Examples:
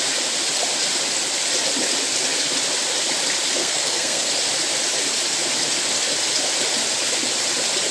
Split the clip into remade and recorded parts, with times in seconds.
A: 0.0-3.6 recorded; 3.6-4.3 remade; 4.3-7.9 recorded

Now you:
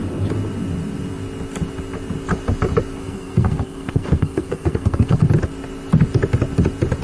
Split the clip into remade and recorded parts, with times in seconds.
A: 0.0-3.0 recorded; 3.0-5.2 remade; 5.2-7.0 recorded

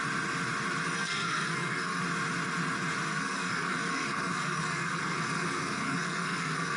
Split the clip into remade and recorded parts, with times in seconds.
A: 0.0-0.9 recorded; 0.9-2.0 remade; 2.0-3.1 recorded; 3.1-6.8 remade

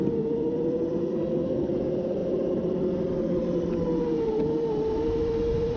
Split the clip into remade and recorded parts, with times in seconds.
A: 0.0-1.0 recorded; 1.0-1.7 remade; 1.7-5.8 recorded

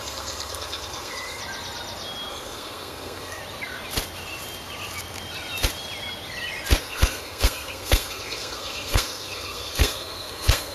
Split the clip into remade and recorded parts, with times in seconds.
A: 0.0-1.4 remade; 1.4-2.3 recorded; 2.3-3.4 remade; 3.4-6.8 recorded; 6.8-10.7 remade

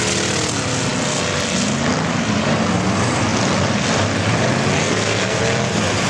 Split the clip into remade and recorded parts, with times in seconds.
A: 0.0-4.8 recorded; 4.8-5.4 remade; 5.4-6.1 recorded

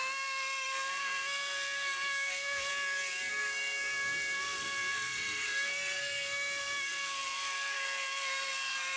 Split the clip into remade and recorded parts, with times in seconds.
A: 0.0-2.7 remade; 2.7-3.3 recorded; 3.3-9.0 remade

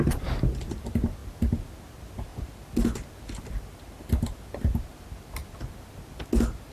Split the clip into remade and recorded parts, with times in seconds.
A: 0.0-6.7 recorded